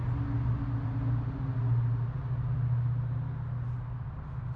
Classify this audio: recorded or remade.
recorded